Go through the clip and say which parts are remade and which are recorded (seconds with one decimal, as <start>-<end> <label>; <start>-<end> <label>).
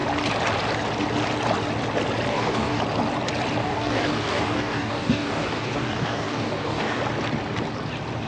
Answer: 0.0-2.3 recorded; 2.3-2.8 remade; 2.8-3.6 recorded; 3.6-7.0 remade; 7.0-8.3 recorded